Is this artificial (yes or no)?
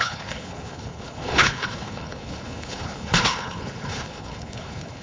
yes